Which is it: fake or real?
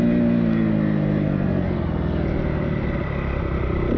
real